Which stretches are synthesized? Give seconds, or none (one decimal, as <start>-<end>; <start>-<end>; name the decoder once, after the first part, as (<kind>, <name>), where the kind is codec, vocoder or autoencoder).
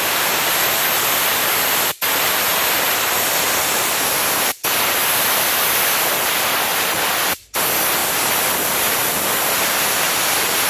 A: 0.0-10.7 (vocoder, BigVGAN v2)